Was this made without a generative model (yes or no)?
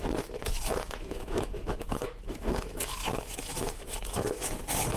no